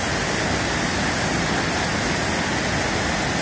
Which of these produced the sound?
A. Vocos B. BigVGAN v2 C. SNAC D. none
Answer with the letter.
D